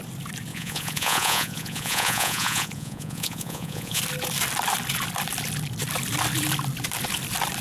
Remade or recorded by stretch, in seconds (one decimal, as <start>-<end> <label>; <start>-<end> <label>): 0.0-0.5 recorded; 0.5-4.0 remade; 4.0-7.6 recorded